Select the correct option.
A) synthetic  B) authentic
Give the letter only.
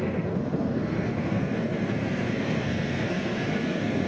A